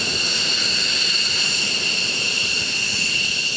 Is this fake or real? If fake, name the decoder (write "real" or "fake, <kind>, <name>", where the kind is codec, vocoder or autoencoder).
real